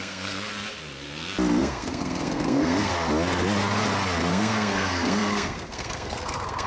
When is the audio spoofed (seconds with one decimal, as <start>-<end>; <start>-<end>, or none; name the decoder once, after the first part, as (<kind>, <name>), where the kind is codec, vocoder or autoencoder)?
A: 0.0-0.5 (codec, SNAC); 1.6-2.9; 4.3-6.7